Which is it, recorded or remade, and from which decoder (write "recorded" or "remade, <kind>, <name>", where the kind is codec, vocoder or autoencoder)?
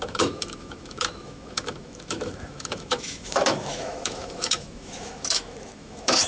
remade, autoencoder, DAC-VAE